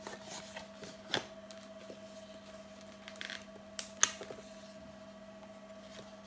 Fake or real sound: real